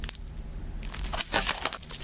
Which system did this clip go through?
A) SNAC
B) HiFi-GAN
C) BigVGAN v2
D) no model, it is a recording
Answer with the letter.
C